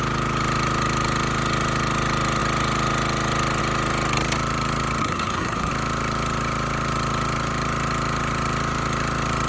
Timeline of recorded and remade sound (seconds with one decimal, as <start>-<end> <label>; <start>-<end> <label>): 0.0-5.0 recorded; 5.0-5.7 remade; 5.7-9.5 recorded